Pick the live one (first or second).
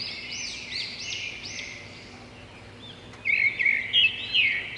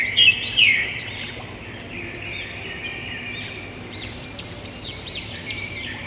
first